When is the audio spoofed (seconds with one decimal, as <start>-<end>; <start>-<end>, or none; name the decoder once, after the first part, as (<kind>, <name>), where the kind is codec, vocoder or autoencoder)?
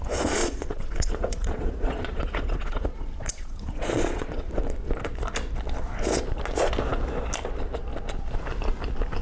0.4-4.6 (vocoder, Vocos)